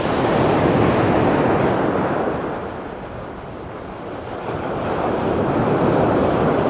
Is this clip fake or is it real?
real